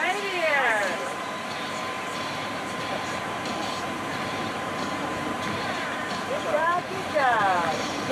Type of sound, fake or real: fake